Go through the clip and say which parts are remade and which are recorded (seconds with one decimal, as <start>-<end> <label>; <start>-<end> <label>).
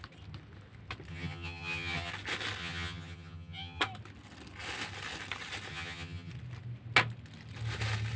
0.0-1.1 recorded; 1.1-2.1 remade; 2.1-2.6 recorded; 2.6-3.8 remade; 3.8-5.7 recorded; 5.7-6.3 remade; 6.3-8.2 recorded